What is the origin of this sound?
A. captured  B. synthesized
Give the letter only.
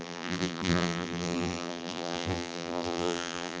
B